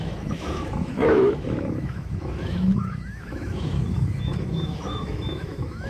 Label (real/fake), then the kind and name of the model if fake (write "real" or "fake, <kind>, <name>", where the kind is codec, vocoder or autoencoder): fake, autoencoder, DAC-VAE